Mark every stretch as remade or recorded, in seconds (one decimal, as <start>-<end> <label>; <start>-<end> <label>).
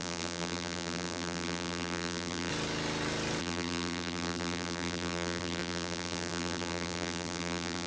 0.0-2.5 remade; 2.5-3.4 recorded; 3.4-7.9 remade